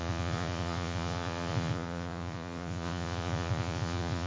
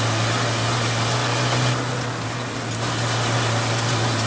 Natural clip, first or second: second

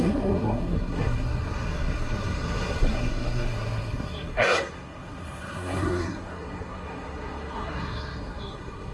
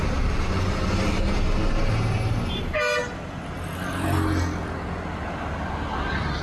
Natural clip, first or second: second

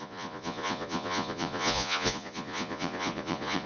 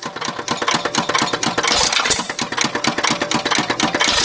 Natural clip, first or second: second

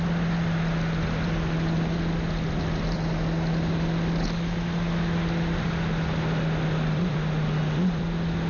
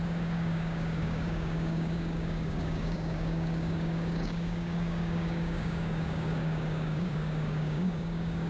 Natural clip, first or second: first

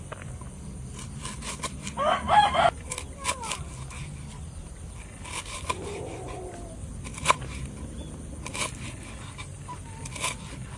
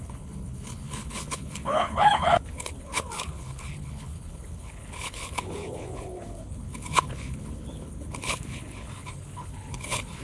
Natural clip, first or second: first